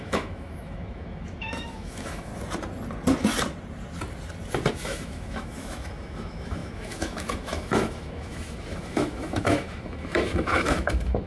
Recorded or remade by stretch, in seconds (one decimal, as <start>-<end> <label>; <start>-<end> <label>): 0.0-2.3 remade; 2.3-4.7 recorded; 4.7-11.3 remade